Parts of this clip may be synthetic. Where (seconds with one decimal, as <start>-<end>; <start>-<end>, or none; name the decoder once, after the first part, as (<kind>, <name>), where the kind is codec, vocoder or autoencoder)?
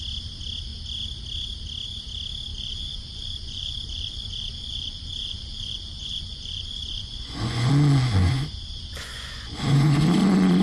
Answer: 2.5-7.7 (vocoder, Vocos); 8.2-10.0